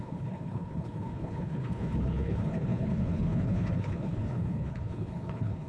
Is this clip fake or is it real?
fake